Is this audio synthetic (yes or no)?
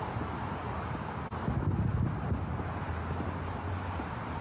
no